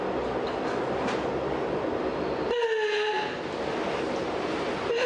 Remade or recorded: recorded